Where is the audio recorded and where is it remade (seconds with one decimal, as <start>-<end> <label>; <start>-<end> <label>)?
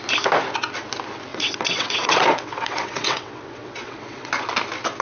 0.0-1.3 recorded; 1.3-4.3 remade; 4.3-5.0 recorded